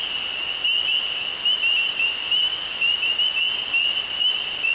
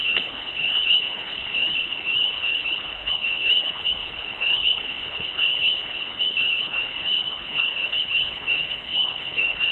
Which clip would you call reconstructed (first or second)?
second